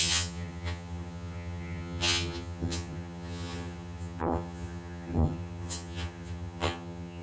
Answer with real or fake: fake